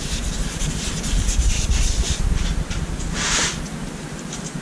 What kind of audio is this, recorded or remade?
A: recorded